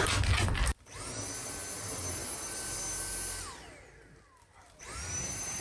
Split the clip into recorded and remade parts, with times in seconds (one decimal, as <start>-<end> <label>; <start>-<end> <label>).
0.0-5.6 recorded